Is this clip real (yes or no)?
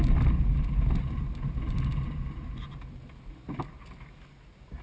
yes